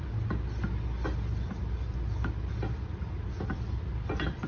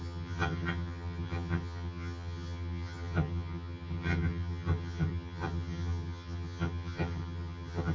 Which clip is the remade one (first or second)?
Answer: second